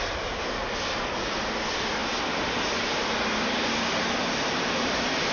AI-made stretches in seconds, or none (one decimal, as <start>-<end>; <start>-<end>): 2.0-5.3